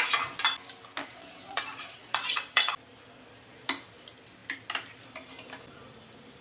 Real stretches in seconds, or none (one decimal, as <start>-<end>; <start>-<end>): 0.0-1.0; 2.7-6.4